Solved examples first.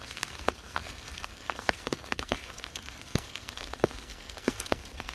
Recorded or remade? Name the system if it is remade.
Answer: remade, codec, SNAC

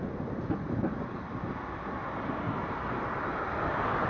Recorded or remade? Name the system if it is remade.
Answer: recorded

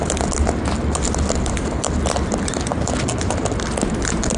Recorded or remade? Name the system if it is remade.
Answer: recorded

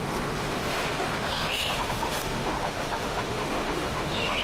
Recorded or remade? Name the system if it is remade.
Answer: remade, autoencoder, DAC-VAE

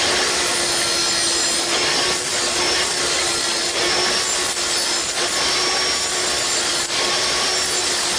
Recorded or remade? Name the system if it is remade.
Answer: recorded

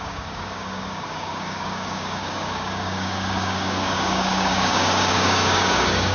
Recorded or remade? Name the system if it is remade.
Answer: remade, codec, DAC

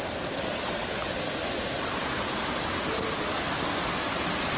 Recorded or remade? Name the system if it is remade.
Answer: recorded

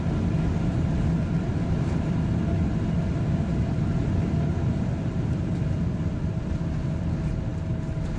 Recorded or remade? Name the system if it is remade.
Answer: recorded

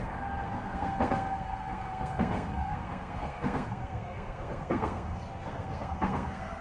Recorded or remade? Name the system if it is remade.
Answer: remade, codec, SNAC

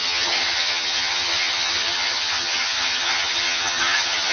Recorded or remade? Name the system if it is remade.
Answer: remade, vocoder, HiFi-GAN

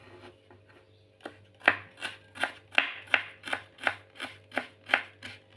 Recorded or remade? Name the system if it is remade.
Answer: recorded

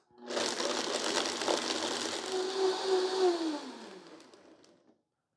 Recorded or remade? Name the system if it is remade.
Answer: recorded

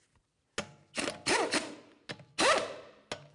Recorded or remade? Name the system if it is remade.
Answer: recorded